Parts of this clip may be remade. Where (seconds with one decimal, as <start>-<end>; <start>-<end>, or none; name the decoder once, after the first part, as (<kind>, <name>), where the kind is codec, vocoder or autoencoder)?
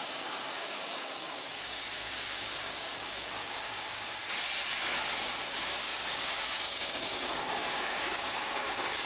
0.0-4.2 (codec, DAC); 5.4-9.1